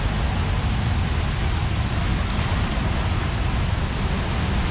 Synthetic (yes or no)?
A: no